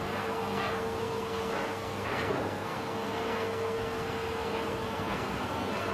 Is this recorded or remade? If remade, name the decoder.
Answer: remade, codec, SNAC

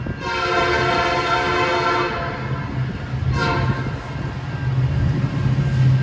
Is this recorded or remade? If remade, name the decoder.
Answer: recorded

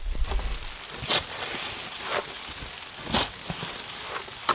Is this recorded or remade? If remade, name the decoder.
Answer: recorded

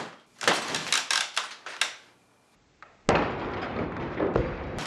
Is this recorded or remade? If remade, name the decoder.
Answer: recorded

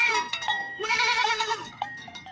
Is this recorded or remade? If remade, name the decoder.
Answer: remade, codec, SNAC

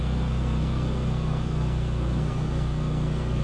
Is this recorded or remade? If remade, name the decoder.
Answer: remade, codec, SNAC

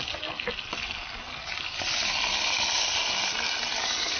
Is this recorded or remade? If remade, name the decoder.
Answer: recorded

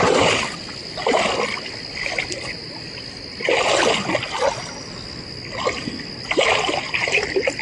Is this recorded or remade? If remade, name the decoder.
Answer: recorded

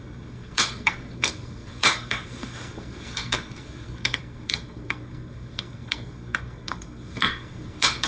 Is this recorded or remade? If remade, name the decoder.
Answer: remade, codec, SNAC